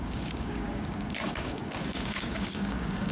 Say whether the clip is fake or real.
fake